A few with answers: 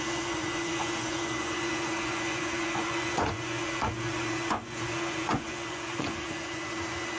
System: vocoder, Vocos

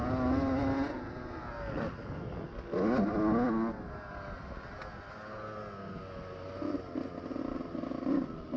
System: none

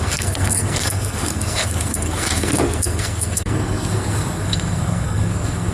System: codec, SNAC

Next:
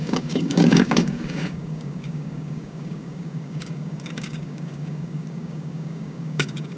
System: codec, DAC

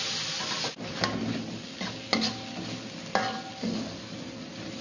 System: none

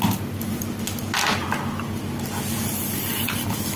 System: none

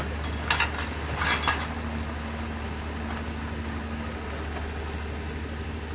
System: none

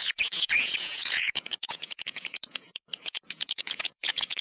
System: vocoder, Vocos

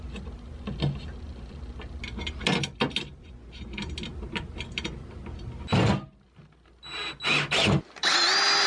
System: none